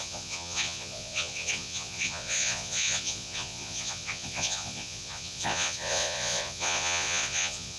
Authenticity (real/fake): fake